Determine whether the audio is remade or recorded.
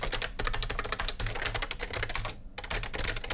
recorded